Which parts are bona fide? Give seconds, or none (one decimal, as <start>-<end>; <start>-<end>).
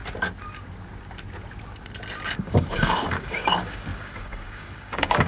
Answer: 0.0-2.3